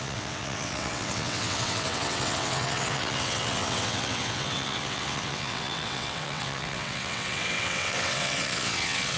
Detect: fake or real fake